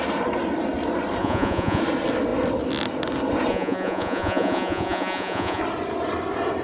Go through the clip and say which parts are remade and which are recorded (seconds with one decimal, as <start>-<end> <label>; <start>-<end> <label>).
0.0-1.2 recorded; 1.2-1.8 remade; 1.8-3.5 recorded; 3.5-5.6 remade; 5.6-6.6 recorded